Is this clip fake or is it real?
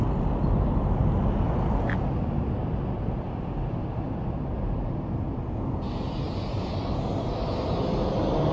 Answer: real